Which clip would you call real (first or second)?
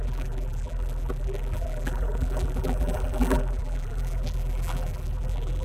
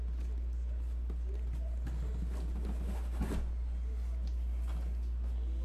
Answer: second